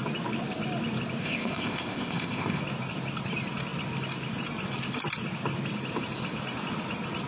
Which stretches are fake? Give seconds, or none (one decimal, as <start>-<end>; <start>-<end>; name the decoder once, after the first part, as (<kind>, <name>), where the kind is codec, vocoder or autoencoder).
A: 1.2-2.6 (codec, ZipCodec)